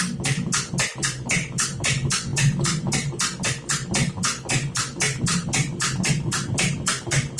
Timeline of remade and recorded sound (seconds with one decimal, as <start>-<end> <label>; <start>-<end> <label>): 0.0-7.4 recorded